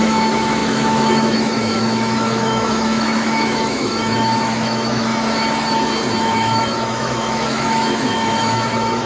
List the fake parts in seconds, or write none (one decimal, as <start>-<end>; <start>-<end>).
0.0-5.1; 6.2-9.1